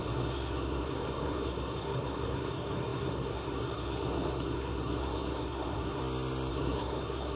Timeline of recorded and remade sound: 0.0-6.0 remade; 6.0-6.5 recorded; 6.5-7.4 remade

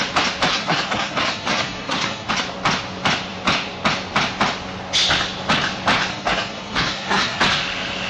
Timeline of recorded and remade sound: 0.0-0.5 recorded; 0.5-2.3 remade; 2.3-6.1 recorded; 6.1-7.4 remade; 7.4-8.1 recorded